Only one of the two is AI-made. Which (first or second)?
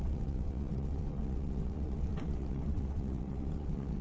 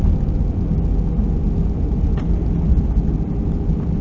first